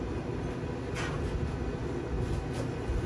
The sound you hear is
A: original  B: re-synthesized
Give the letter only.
A